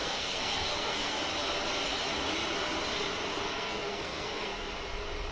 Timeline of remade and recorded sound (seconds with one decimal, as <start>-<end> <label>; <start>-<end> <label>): 0.0-1.2 remade; 1.2-3.4 recorded; 3.4-4.5 remade; 4.5-5.3 recorded